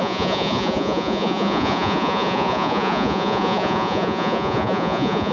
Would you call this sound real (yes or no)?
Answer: no